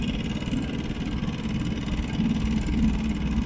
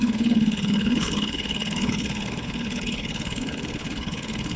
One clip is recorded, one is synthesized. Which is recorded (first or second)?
first